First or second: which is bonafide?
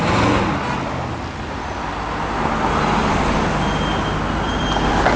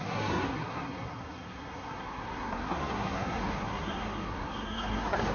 first